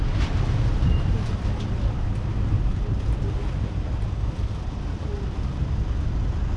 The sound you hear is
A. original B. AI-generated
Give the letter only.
A